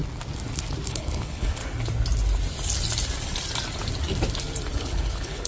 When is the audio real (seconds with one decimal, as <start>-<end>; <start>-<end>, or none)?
0.0-0.9; 1.6-4.7